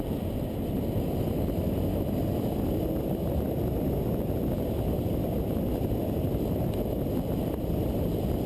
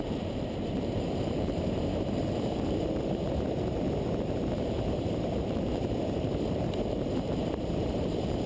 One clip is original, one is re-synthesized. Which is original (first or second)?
first